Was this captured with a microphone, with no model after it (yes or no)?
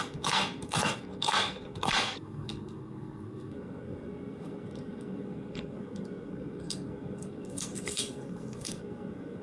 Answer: no